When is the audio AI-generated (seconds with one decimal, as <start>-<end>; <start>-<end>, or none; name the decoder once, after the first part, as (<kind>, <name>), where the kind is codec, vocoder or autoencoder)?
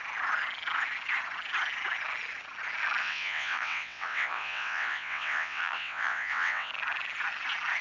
3.0-6.7 (vocoder, WaveNeXt)